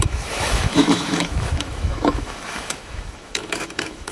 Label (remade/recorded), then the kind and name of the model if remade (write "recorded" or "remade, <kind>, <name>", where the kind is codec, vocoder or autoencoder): remade, autoencoder, DAC-VAE